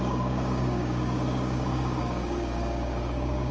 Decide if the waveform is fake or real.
fake